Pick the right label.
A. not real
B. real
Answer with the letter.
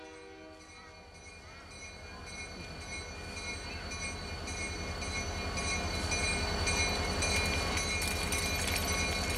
B